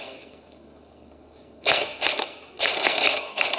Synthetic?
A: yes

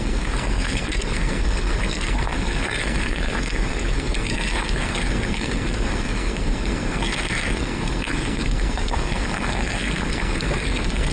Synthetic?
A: yes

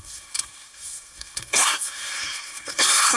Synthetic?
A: yes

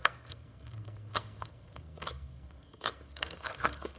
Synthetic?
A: yes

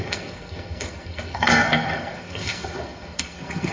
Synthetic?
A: yes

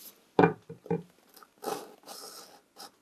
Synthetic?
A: no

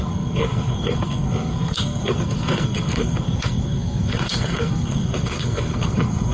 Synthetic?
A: yes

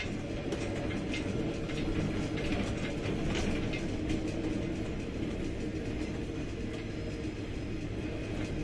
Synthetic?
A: no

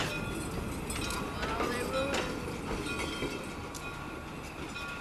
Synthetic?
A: no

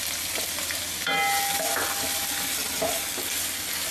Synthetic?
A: no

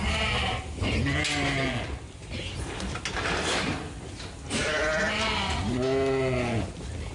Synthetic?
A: no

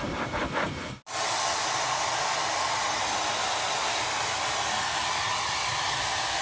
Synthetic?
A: no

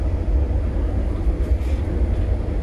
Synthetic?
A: no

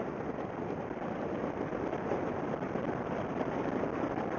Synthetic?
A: no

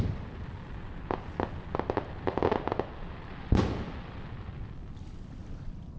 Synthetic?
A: no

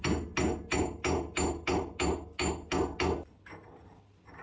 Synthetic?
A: no